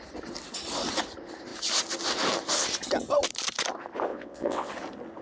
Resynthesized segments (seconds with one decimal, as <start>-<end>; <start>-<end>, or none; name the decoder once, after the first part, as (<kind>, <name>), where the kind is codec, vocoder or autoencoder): 4.1-4.7 (vocoder, WaveNeXt)